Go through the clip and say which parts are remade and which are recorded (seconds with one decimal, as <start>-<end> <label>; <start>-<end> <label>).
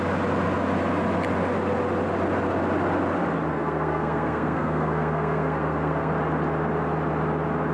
0.0-3.5 recorded; 3.5-6.1 remade; 6.1-7.7 recorded